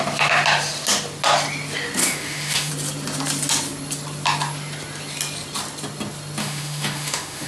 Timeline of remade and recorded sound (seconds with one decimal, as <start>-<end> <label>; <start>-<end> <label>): 0.0-2.0 recorded; 2.0-2.7 remade; 2.7-6.4 recorded; 6.4-7.5 remade